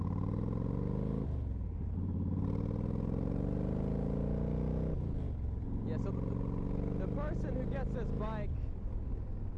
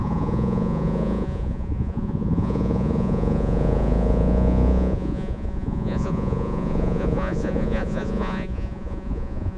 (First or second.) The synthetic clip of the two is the second